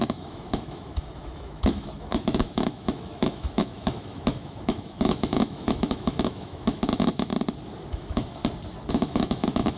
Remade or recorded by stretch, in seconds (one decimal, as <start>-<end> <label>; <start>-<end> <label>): 0.0-7.3 remade; 7.3-7.9 recorded; 7.9-8.4 remade; 8.4-8.9 recorded; 8.9-9.8 remade